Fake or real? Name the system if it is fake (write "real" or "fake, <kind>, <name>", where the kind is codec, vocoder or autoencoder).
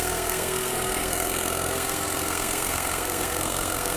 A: fake, codec, SNAC